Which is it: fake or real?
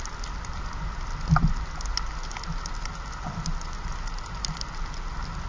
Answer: real